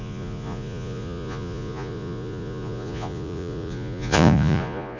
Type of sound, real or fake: fake